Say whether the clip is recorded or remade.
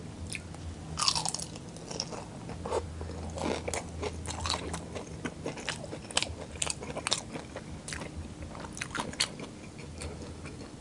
recorded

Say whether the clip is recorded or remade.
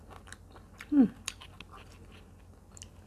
recorded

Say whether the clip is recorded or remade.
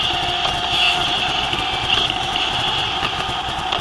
recorded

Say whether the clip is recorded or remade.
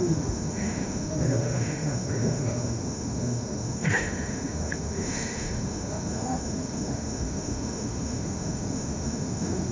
remade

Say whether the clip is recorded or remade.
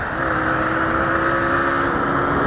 recorded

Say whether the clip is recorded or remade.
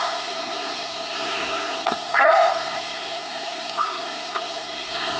remade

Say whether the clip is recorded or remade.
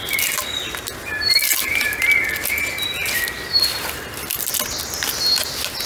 recorded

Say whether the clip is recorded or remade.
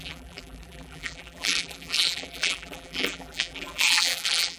remade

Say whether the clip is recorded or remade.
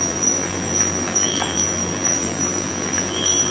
remade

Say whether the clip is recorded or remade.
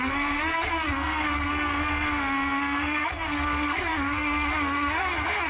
remade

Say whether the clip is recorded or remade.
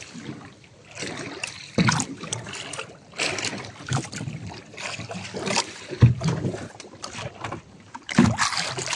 remade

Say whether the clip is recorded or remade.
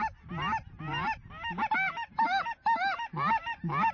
recorded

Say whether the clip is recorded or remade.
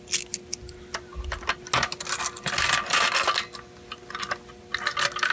recorded